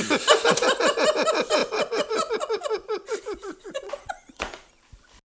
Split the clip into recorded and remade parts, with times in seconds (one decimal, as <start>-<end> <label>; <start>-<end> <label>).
0.0-1.6 recorded; 1.6-4.7 remade; 4.7-5.2 recorded